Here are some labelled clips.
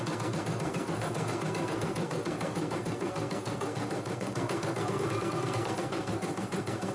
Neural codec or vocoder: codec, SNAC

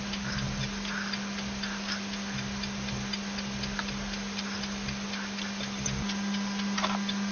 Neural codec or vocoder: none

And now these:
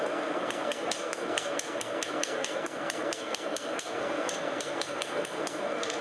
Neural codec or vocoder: codec, SNAC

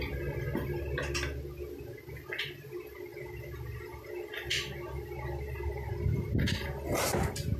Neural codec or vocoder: none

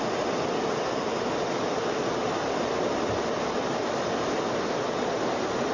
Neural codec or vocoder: none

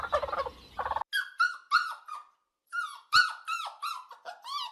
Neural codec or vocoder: none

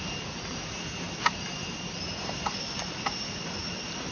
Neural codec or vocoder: none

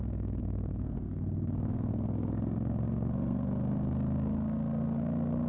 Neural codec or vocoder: codec, SNAC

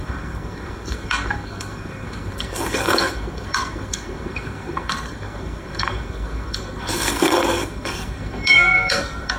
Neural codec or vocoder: codec, SNAC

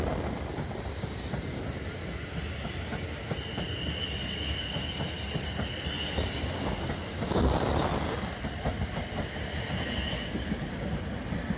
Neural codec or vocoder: none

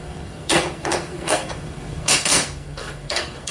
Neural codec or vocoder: codec, SNAC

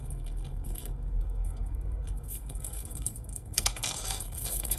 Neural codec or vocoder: codec, SNAC